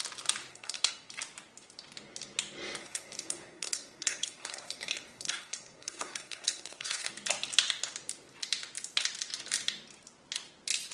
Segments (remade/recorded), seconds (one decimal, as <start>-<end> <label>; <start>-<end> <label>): 0.0-0.5 recorded; 0.5-1.1 remade; 1.1-2.8 recorded; 2.8-7.1 remade; 7.1-10.9 recorded